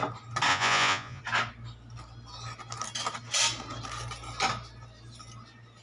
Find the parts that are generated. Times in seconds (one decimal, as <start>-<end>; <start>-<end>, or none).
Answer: 0.5-1.2

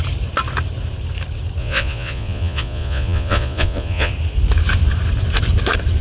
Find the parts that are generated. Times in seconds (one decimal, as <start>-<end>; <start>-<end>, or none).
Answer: 1.6-4.1